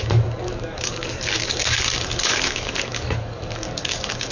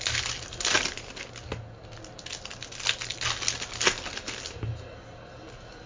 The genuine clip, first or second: second